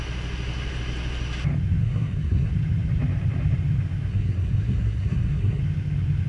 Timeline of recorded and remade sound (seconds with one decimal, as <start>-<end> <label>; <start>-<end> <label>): 0.0-1.8 recorded; 1.8-2.5 remade; 2.5-4.1 recorded; 4.1-5.6 remade; 5.6-6.3 recorded